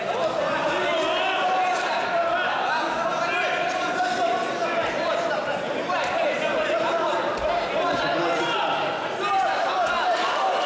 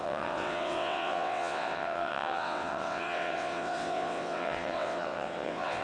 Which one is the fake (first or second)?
second